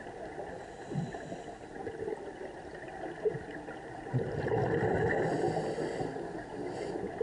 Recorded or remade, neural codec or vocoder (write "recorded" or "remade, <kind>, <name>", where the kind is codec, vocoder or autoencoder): recorded